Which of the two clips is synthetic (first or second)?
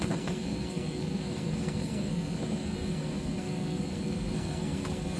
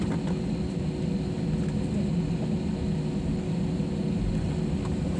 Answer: first